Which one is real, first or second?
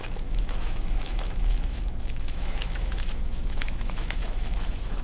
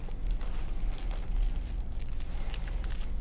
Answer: second